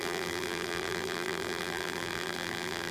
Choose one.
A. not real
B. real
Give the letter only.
A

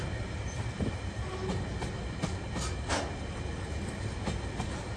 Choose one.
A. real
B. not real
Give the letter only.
A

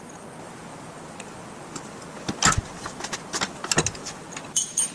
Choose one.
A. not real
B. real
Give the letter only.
B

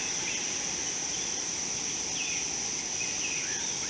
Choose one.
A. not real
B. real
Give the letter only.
B